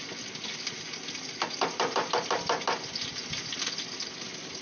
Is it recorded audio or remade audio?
recorded